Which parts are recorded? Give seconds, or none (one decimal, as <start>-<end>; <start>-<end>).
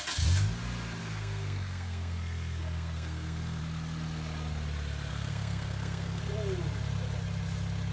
0.0-1.0; 3.6-5.1; 6.2-7.9